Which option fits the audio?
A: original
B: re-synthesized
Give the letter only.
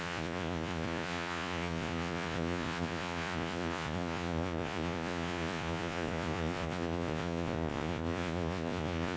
B